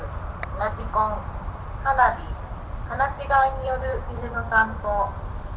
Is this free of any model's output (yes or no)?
no